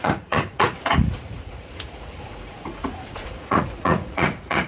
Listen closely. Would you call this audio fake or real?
fake